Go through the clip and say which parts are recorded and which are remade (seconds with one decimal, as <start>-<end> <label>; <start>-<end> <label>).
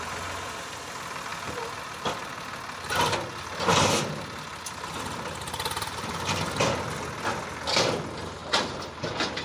0.0-1.3 recorded; 1.3-1.8 remade; 1.8-8.4 recorded; 8.4-9.4 remade